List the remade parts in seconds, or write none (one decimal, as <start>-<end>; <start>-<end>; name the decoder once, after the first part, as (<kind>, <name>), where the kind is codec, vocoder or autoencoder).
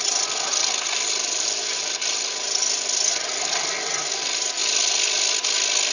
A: none